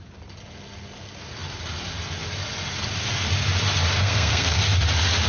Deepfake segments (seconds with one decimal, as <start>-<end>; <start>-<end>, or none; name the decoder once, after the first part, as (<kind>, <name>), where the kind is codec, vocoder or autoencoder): 4.0-4.6 (codec, SNAC)